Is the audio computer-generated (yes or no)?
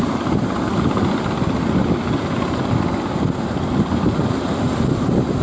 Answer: no